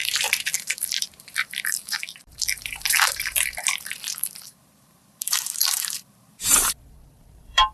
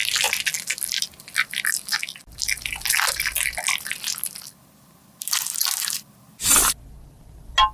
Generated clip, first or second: first